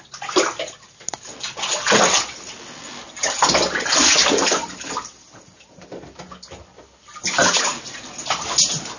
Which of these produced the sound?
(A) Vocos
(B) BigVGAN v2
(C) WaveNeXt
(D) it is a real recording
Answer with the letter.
D